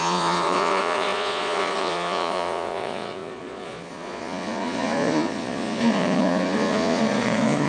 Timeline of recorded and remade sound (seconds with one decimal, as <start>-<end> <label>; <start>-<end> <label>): 0.0-7.7 remade